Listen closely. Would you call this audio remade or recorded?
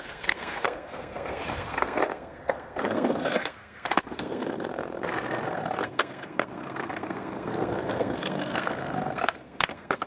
remade